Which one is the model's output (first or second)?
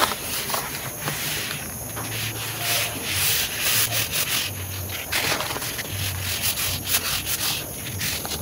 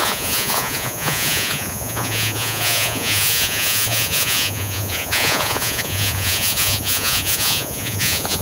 second